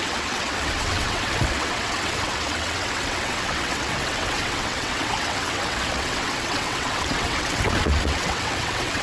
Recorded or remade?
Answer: remade